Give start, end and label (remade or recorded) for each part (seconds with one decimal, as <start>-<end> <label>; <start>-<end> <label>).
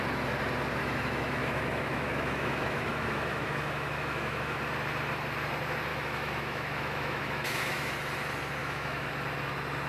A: 0.0-0.8 recorded; 0.8-4.6 remade; 4.6-5.9 recorded; 5.9-7.9 remade; 7.9-8.6 recorded; 8.6-9.1 remade; 9.1-9.9 recorded